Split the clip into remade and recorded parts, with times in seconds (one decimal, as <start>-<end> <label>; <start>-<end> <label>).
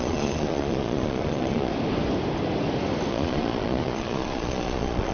0.0-1.7 remade; 1.7-3.1 recorded; 3.1-5.1 remade